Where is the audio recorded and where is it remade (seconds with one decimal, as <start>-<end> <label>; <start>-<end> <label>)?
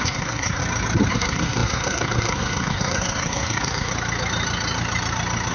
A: 0.0-0.6 remade; 0.6-1.1 recorded; 1.1-3.9 remade; 3.9-5.5 recorded